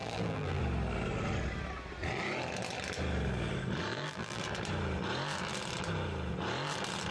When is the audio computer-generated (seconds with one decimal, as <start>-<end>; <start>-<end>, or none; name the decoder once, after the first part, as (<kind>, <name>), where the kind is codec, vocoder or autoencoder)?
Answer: 0.0-0.6 (vocoder, BigVGAN v2); 3.9-4.4